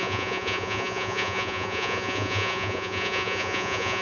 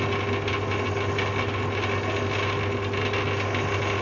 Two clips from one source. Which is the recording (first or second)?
second